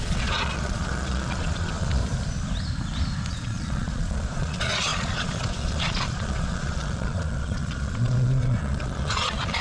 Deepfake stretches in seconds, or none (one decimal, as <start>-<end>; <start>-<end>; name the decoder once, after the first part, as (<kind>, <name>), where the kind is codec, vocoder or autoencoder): 0.0-2.0 (vocoder, Vocos); 3.3-9.6